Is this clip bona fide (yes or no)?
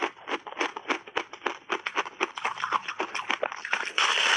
yes